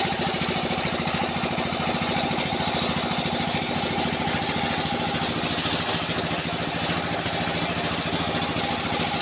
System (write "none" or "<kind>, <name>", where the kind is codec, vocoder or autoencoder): none